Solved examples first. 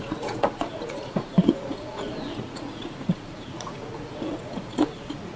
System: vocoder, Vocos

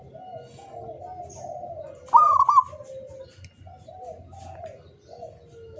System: none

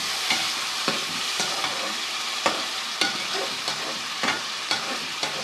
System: vocoder, BigVGAN v2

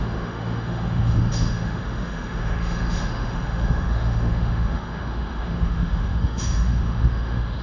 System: autoencoder, DAC-VAE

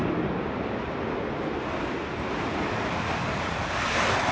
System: none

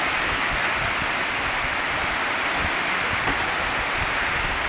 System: none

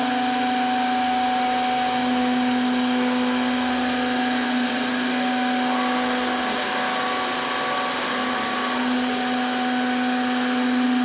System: none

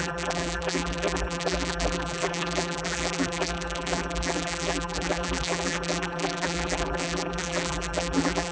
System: vocoder, BigVGAN v2